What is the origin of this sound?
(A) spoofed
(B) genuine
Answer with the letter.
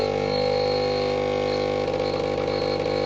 B